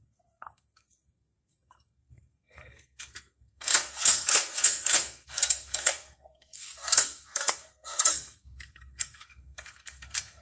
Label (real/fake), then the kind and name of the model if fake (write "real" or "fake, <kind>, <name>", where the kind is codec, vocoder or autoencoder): fake, codec, SNAC